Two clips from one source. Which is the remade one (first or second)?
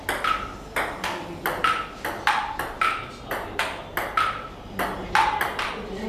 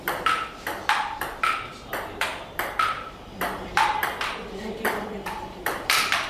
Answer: second